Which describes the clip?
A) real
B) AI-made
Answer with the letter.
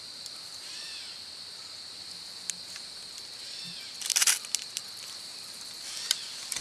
A